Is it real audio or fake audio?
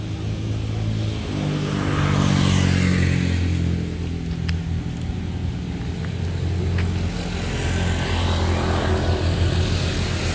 real